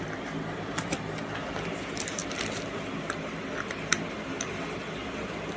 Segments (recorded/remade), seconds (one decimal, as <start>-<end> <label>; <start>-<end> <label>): 0.0-2.2 remade; 2.2-3.0 recorded; 3.0-3.9 remade; 3.9-5.6 recorded

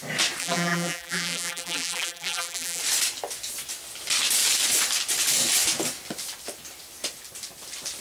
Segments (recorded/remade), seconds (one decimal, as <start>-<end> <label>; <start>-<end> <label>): 0.0-0.4 recorded; 0.4-2.8 remade; 2.8-8.0 recorded

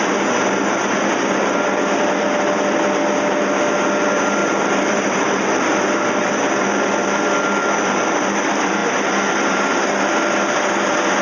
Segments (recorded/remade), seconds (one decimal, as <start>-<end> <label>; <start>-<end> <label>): 0.0-4.4 recorded; 4.4-5.2 remade; 5.2-11.2 recorded